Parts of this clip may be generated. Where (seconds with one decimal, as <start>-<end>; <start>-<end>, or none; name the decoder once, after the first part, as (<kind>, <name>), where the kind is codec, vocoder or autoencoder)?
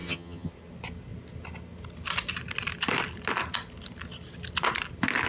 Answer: 0.0-0.5 (vocoder, HiFi-GAN)